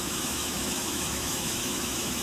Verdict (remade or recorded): remade